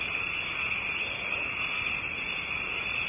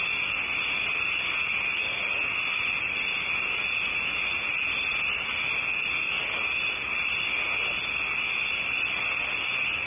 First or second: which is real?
second